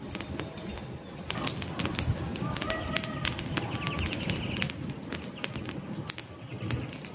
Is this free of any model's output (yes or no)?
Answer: yes